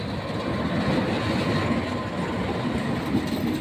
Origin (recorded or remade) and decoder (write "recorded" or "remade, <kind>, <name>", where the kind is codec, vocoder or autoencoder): recorded